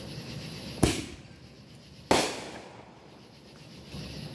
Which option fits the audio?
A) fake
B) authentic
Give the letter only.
B